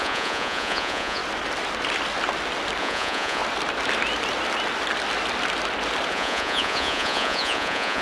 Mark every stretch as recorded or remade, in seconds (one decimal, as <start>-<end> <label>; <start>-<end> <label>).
0.0-1.2 remade; 1.2-2.8 recorded; 2.8-3.4 remade; 3.4-6.1 recorded; 6.1-8.0 remade